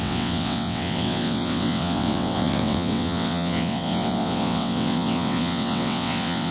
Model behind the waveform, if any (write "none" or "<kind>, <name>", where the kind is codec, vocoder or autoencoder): vocoder, WaveNeXt